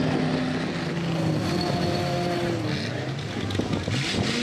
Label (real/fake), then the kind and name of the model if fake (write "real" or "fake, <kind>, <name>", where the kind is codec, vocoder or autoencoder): real